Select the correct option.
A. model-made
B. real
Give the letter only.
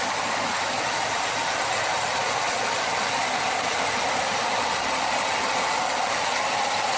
B